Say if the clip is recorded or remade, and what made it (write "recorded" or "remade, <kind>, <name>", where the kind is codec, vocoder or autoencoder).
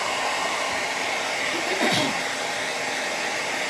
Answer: recorded